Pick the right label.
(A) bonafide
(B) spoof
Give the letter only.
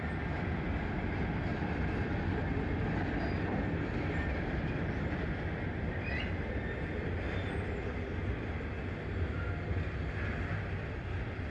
A